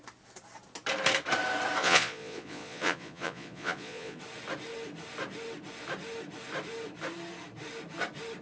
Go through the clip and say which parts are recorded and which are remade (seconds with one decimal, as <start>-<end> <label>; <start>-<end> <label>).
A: 0.0-1.8 recorded; 1.8-4.2 remade; 4.2-8.4 recorded